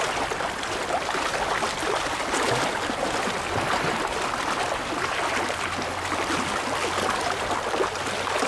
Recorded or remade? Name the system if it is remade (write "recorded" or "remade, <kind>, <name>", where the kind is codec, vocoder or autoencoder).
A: recorded